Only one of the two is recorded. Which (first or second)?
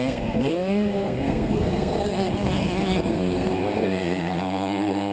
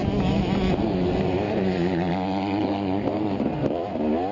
second